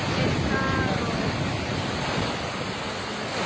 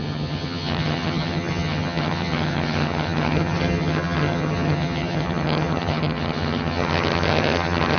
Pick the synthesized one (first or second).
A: second